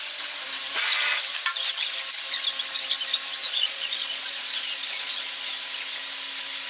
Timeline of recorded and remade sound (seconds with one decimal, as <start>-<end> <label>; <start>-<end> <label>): 0.0-3.4 recorded; 3.4-5.3 remade; 5.3-6.7 recorded